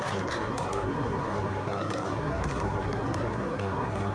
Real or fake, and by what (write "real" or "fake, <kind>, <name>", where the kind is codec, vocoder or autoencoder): fake, codec, SNAC